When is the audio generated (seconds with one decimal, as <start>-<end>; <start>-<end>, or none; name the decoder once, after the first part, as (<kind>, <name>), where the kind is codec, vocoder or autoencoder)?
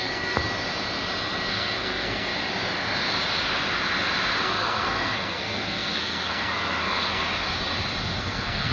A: 0.0-0.4 (codec, SNAC); 1.5-2.3; 4.4-7.2; 8.2-8.7